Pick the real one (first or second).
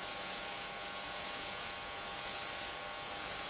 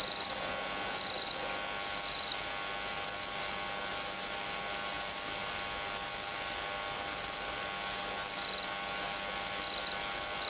second